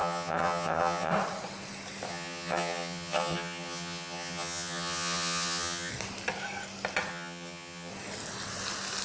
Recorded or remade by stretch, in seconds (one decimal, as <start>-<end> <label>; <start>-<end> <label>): 0.0-1.1 remade; 1.1-2.1 recorded; 2.1-5.9 remade; 5.9-7.1 recorded; 7.1-7.9 remade; 7.9-9.0 recorded